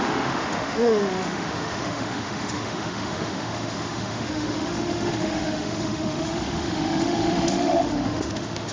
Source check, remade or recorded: remade